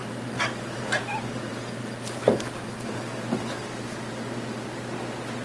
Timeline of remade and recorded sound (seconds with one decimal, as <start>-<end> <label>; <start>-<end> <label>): 0.0-5.4 recorded